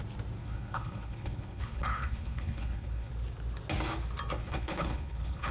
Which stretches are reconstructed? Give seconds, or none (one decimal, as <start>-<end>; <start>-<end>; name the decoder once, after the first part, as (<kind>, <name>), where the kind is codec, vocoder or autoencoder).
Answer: 0.4-3.1 (codec, HILCodec); 4.4-5.5